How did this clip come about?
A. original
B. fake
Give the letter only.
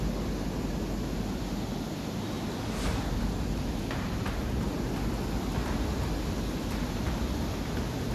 A